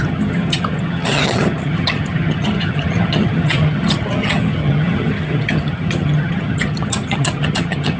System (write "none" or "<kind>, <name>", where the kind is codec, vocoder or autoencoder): vocoder, HiFi-GAN